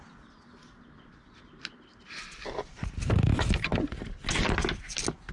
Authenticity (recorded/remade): recorded